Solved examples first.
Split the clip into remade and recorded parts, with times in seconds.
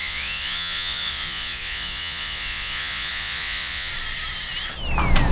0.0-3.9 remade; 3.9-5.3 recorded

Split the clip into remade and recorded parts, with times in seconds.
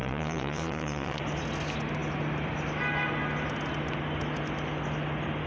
0.0-1.2 remade; 1.2-5.5 recorded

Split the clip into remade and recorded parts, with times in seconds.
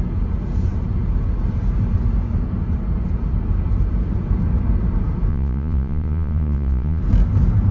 0.0-5.3 recorded; 5.3-7.0 remade; 7.0-7.7 recorded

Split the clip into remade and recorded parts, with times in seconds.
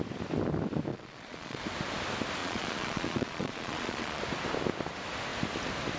0.0-0.9 recorded; 0.9-1.6 remade; 1.6-2.4 recorded; 2.4-4.2 remade; 4.2-6.0 recorded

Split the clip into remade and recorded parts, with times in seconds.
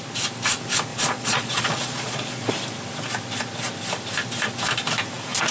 0.0-0.9 recorded; 0.9-2.5 remade; 2.5-5.5 recorded